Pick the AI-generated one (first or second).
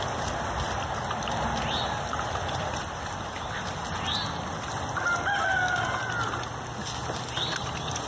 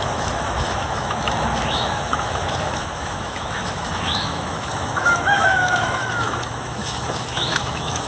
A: second